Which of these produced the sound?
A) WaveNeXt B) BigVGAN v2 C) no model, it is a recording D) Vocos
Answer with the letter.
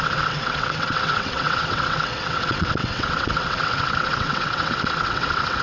A